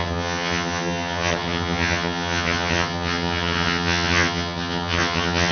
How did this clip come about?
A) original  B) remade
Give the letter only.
B